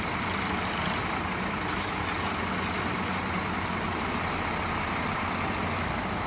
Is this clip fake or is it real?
real